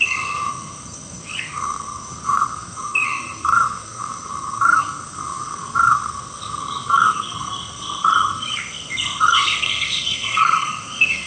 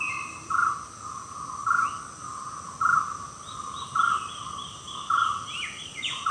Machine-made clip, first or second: first